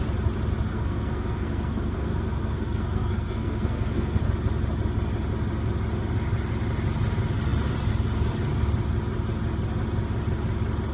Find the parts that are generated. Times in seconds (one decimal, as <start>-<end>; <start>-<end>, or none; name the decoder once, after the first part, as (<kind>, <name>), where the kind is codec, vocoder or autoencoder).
0.7-4.2 (codec, SNAC)